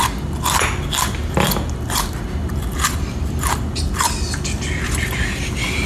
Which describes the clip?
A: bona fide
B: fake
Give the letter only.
A